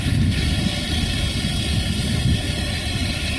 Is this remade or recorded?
recorded